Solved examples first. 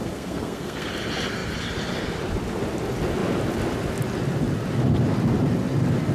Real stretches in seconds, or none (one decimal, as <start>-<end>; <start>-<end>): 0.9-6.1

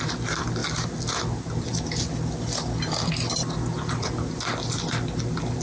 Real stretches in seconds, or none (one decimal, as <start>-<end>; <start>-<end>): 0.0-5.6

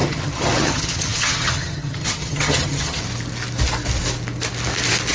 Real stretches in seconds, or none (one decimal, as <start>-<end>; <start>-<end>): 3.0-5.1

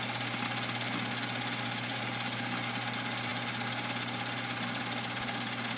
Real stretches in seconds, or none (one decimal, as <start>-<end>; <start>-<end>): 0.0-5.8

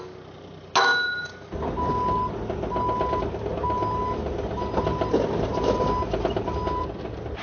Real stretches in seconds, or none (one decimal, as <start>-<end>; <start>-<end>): 0.0-7.4

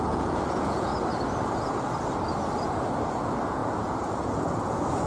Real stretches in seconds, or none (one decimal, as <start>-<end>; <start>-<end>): 0.9-3.1

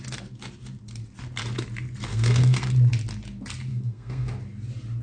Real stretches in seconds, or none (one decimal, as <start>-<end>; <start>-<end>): 0.0-2.1; 2.7-3.7; 4.3-5.0

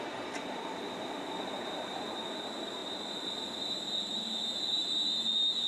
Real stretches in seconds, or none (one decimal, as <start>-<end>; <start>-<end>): none